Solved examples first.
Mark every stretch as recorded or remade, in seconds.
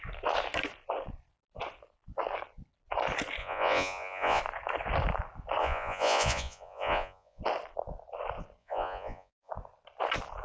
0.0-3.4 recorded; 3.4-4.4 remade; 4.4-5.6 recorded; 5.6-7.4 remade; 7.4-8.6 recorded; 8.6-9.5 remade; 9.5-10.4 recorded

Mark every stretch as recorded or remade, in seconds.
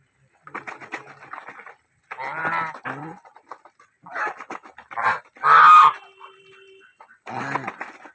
0.0-2.4 remade; 2.4-3.0 recorded; 3.0-8.1 remade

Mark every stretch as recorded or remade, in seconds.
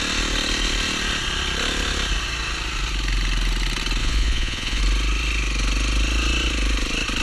0.0-4.0 recorded; 4.0-4.8 remade; 4.8-7.2 recorded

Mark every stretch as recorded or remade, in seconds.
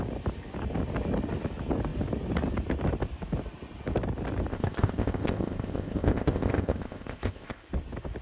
0.0-4.5 recorded; 4.5-7.7 remade; 7.7-8.2 recorded